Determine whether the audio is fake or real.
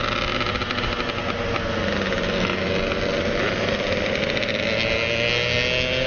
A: real